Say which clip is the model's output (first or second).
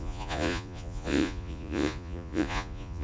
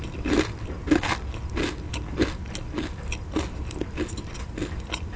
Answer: first